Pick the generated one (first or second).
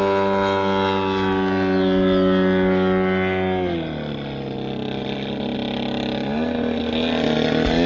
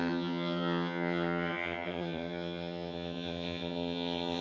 second